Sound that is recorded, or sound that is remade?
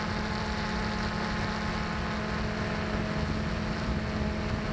recorded